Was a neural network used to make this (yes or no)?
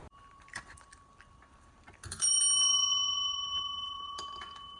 yes